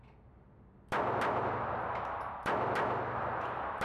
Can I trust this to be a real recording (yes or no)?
yes